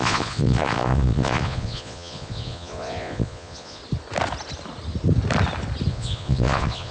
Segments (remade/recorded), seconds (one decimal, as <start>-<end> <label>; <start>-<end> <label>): 0.0-3.8 remade; 3.8-5.9 recorded; 5.9-6.9 remade